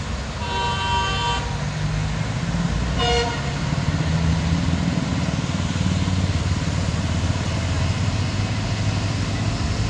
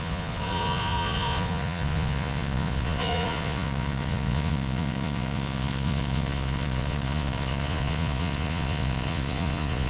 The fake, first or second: second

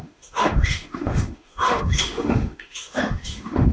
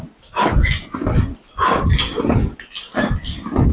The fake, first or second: first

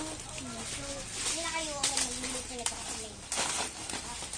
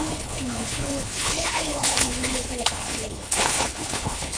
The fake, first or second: second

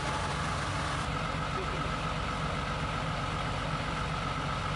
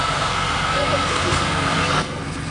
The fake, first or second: second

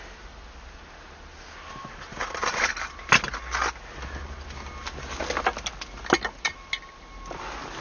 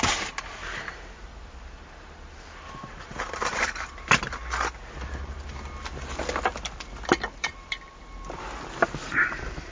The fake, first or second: second